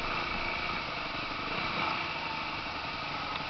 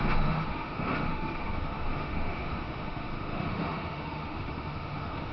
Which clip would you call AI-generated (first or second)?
second